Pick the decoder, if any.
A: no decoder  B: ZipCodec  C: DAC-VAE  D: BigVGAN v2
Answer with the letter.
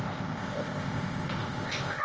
B